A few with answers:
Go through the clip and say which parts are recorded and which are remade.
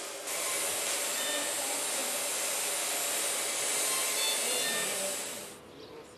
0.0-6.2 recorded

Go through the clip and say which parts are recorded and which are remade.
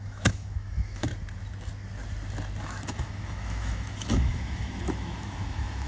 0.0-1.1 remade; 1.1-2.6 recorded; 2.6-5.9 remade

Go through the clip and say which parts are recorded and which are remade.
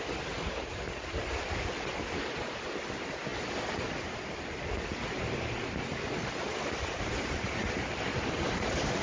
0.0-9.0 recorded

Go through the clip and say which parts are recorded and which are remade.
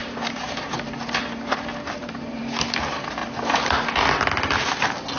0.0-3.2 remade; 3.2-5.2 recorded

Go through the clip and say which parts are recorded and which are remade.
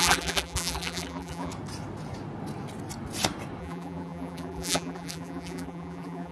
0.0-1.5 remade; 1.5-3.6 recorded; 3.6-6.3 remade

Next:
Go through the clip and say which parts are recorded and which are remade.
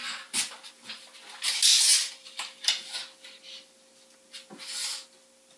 0.0-0.7 remade; 0.7-1.9 recorded; 1.9-2.7 remade; 2.7-5.6 recorded